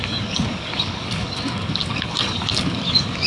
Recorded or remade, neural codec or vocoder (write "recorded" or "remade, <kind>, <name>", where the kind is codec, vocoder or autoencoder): remade, codec, DAC